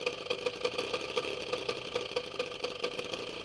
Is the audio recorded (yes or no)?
yes